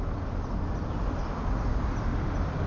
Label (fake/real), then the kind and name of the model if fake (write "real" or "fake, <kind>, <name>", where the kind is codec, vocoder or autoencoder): real